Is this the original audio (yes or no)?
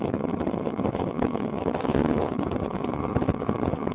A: no